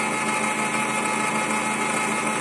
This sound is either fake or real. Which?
real